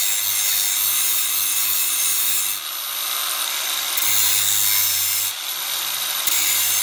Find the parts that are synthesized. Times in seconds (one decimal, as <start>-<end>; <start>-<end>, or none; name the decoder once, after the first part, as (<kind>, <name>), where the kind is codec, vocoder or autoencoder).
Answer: 0.9-2.4 (vocoder, BigVGAN v2); 3.2-4.1; 4.8-6.8